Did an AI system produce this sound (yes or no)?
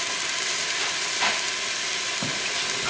no